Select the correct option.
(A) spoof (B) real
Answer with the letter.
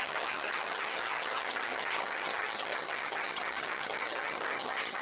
A